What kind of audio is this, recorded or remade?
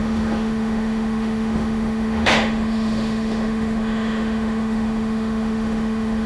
remade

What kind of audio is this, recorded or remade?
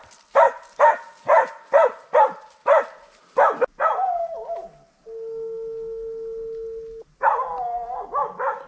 recorded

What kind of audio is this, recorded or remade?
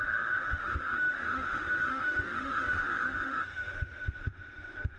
remade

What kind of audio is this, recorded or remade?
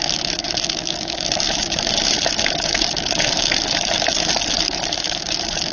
remade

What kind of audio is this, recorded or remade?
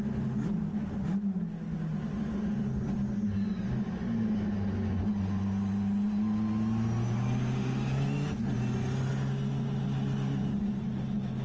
recorded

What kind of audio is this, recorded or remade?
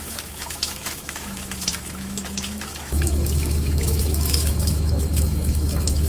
remade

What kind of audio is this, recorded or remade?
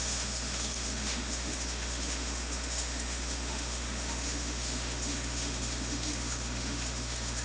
remade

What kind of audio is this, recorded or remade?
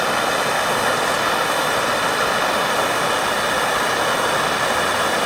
recorded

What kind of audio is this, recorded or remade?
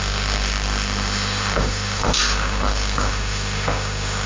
remade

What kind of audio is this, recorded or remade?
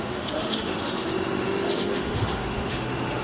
remade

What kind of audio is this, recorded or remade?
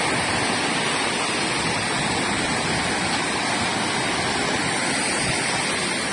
recorded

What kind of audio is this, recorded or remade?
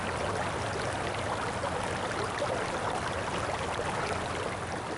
recorded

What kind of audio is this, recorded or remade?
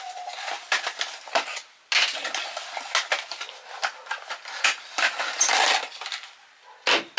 recorded